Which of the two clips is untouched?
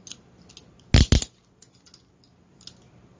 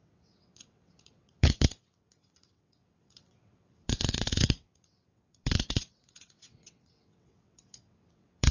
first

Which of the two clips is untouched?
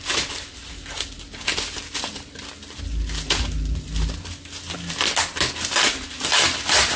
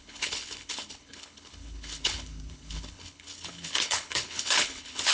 first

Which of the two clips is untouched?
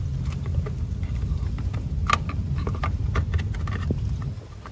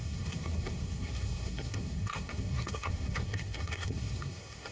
first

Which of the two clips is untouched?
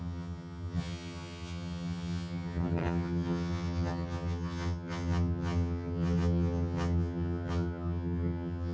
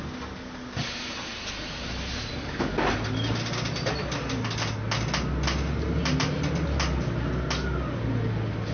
second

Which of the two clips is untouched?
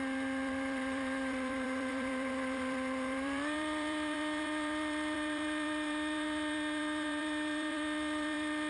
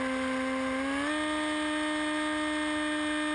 second